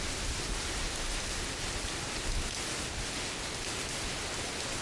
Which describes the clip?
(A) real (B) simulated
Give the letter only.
A